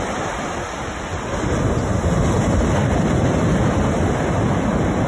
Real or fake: real